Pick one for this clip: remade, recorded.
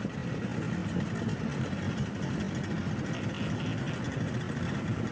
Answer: recorded